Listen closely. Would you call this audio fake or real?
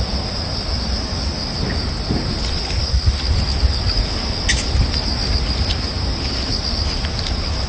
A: real